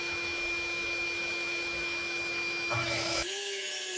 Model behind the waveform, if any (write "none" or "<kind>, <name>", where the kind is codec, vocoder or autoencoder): autoencoder, DAC-VAE